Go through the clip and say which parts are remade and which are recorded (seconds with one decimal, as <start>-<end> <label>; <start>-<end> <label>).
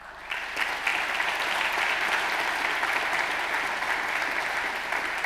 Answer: 0.0-5.3 recorded